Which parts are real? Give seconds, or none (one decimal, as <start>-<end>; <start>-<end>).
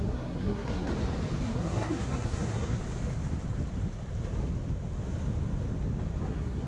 0.9-1.4; 2.8-6.3